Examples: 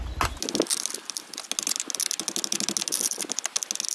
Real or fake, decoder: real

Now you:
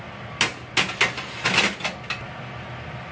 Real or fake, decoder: real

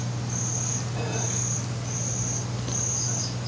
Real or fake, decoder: real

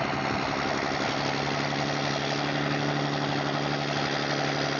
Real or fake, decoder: real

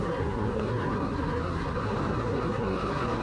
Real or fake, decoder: fake, codec, SNAC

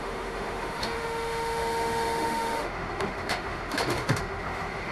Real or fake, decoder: fake, autoencoder, DAC-VAE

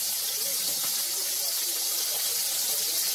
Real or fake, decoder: real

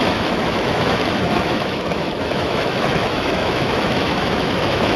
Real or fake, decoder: fake, autoencoder, DAC-VAE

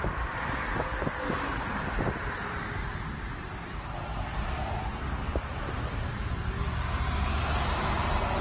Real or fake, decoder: real